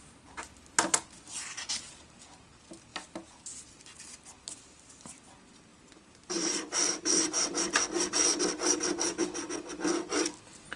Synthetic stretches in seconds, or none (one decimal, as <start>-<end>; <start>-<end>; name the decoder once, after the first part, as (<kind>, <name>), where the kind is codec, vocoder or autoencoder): 5.7-7.6 (vocoder, BigVGAN v2)